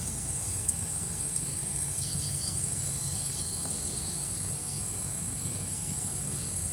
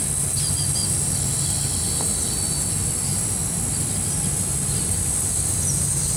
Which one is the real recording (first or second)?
second